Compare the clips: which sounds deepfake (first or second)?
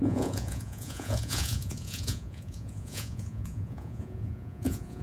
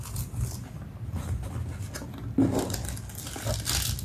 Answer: first